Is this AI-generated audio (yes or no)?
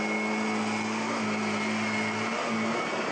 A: no